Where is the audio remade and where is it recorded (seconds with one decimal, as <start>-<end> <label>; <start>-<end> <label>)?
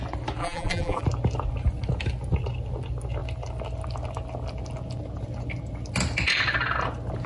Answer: 0.0-0.4 recorded; 0.4-1.0 remade; 1.0-7.3 recorded